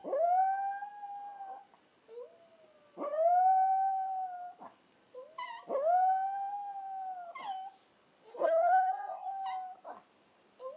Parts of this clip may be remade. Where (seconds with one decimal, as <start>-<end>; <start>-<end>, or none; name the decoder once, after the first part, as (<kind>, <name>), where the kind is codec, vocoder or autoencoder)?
8.3-9.3 (codec, SNAC)